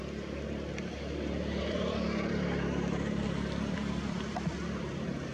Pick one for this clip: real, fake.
fake